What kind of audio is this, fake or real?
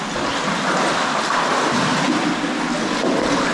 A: real